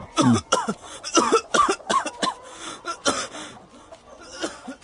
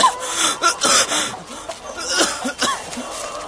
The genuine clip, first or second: second